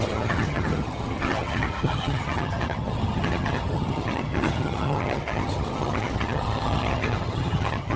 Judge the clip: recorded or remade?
remade